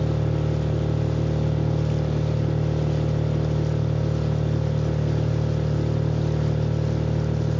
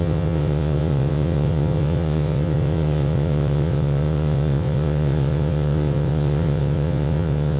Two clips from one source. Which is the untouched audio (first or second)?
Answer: first